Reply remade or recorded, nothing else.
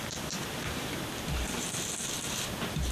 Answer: recorded